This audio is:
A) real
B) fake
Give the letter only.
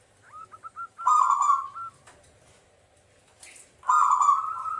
A